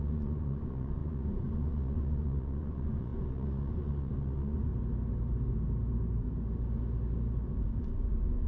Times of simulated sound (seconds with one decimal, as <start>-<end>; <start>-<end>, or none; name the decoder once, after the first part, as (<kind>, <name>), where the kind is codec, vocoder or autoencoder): 0.0-4.7 (vocoder, Vocos); 7.8-8.5